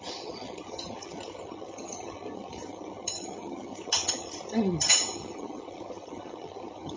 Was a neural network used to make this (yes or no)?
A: yes